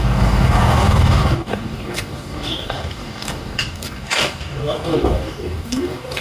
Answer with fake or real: fake